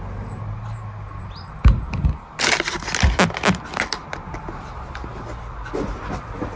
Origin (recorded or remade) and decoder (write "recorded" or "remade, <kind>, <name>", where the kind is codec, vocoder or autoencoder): recorded